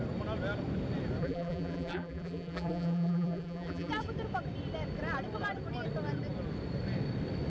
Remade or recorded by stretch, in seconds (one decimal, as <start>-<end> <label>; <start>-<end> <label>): 0.0-1.2 recorded; 1.2-3.9 remade; 3.9-7.5 recorded